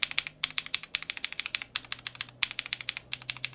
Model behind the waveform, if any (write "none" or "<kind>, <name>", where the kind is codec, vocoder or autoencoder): none